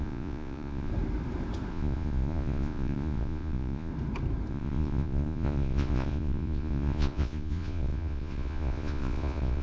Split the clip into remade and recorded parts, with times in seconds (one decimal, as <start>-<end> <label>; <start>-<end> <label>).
0.0-0.9 remade; 0.9-1.7 recorded; 1.7-3.9 remade; 3.9-4.5 recorded; 4.5-9.6 remade